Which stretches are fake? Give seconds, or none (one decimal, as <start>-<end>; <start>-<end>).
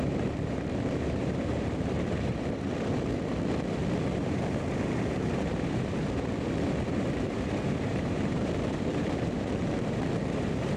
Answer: 0.0-2.7; 4.0-10.8